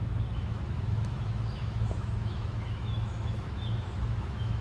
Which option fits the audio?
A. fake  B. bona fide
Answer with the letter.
A